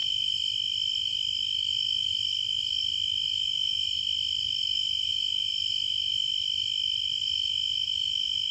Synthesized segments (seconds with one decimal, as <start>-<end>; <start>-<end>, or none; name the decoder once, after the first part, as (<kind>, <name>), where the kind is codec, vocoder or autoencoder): 0.0-1.1 (vocoder, BigVGAN v2); 2.1-2.9; 4.6-5.1; 6.2-7.2